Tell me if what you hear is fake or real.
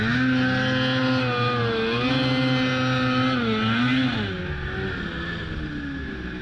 real